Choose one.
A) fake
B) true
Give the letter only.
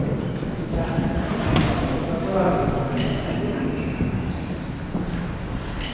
B